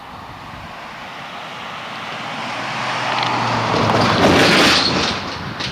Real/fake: real